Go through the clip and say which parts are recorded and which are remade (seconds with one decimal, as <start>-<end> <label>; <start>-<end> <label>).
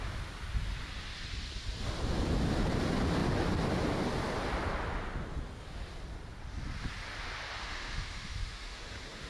0.0-7.6 recorded; 7.6-9.3 remade